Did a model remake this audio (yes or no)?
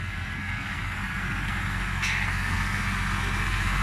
yes